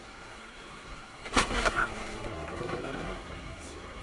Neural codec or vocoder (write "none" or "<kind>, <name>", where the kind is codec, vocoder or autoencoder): codec, SNAC